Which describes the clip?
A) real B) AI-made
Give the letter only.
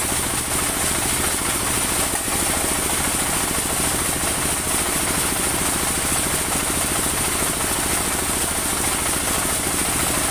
A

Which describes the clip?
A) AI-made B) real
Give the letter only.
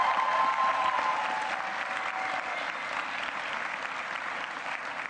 B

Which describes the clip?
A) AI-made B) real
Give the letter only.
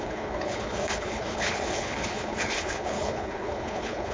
A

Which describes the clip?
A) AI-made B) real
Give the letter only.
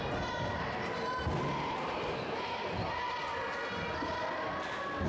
B